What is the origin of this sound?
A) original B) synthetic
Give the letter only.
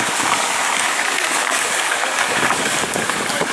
B